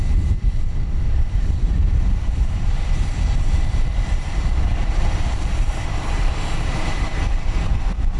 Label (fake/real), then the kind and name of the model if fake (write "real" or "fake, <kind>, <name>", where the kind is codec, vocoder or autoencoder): fake, vocoder, BigVGAN v2